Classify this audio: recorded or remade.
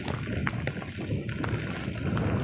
recorded